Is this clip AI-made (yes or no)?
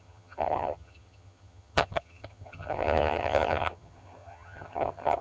yes